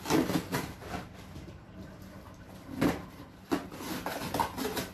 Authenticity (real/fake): real